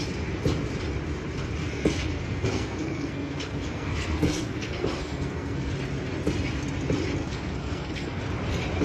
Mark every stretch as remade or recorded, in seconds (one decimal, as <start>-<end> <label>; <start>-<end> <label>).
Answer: 0.0-1.6 recorded; 1.6-5.7 remade; 5.7-7.2 recorded; 7.2-8.2 remade; 8.2-8.8 recorded